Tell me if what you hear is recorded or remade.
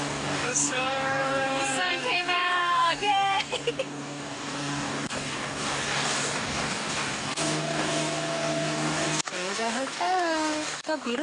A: remade